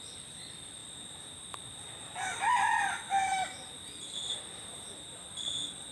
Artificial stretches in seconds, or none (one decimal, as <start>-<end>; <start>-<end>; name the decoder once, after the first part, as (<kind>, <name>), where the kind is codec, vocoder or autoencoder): 0.0-2.1 (vocoder, BigVGAN v2)